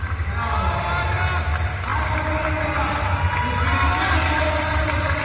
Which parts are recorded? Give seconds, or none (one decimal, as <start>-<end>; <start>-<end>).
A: 0.0-5.2